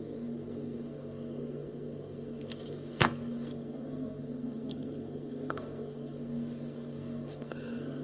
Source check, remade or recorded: remade